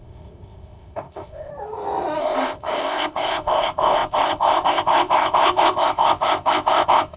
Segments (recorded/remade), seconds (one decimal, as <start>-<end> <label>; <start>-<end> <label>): 0.0-1.5 remade; 1.5-2.2 recorded; 2.2-7.2 remade

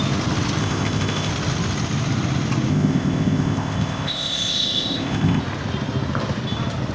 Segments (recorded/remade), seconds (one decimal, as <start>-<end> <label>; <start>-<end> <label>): 0.0-0.6 recorded; 0.6-1.3 remade; 1.3-2.7 recorded; 2.7-5.4 remade; 5.4-6.9 recorded

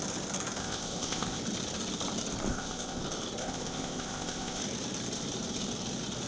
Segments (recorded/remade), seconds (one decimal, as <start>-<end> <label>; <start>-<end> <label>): 0.0-0.6 recorded; 0.6-1.4 remade; 1.4-2.5 recorded; 2.5-3.0 remade; 3.0-3.4 recorded; 3.4-4.6 remade; 4.6-6.3 recorded

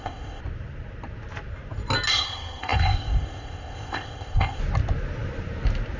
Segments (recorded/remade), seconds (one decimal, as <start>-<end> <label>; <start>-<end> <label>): 0.0-0.4 remade; 0.4-2.1 recorded; 2.1-4.6 remade; 4.6-6.0 recorded

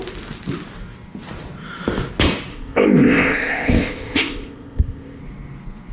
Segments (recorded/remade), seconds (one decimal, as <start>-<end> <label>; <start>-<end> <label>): 0.0-2.5 recorded; 2.5-5.2 remade; 5.2-5.9 recorded

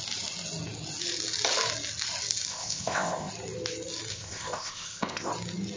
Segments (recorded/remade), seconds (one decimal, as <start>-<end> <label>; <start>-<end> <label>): 0.0-2.5 recorded; 2.5-3.3 remade; 3.3-4.1 recorded; 4.1-5.3 remade; 5.3-5.8 recorded

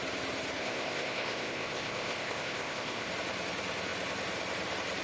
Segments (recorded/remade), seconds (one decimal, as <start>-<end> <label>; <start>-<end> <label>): 0.0-0.6 recorded; 0.6-3.1 remade; 3.1-5.0 recorded

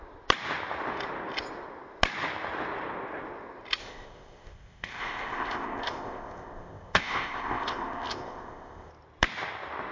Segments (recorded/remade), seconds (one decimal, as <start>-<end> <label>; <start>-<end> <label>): 0.0-3.8 recorded; 3.8-8.9 remade; 8.9-9.9 recorded